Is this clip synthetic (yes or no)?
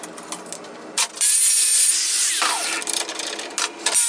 no